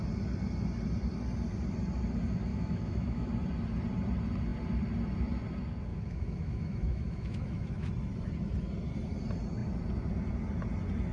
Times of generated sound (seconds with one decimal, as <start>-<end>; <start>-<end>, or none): 2.5-3.3; 5.9-7.9